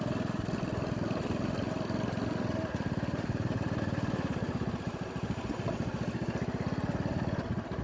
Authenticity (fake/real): real